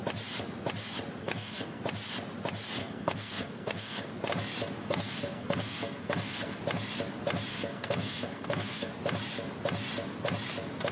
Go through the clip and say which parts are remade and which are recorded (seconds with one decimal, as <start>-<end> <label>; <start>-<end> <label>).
0.0-1.2 recorded; 1.2-1.8 remade; 1.8-2.8 recorded; 2.8-4.1 remade; 4.1-4.8 recorded; 4.8-6.6 remade; 6.6-7.5 recorded; 7.5-8.9 remade; 8.9-10.9 recorded